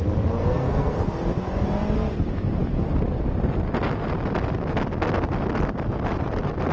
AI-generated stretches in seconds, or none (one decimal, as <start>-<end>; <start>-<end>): 0.4-1.1

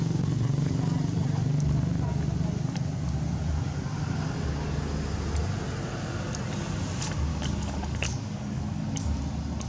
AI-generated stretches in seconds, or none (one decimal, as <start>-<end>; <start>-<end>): 7.3-9.2

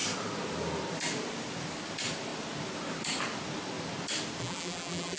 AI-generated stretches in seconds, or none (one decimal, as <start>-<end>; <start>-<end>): 4.4-5.2

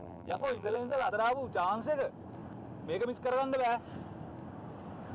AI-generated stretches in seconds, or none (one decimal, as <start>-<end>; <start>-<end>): 0.0-1.1